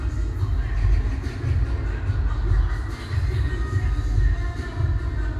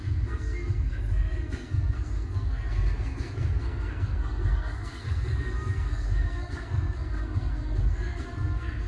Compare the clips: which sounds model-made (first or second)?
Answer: second